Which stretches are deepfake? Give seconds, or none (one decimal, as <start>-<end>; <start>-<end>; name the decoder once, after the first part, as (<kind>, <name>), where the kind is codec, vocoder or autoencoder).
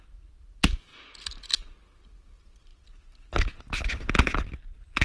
0.9-2.0 (vocoder, BigVGAN v2)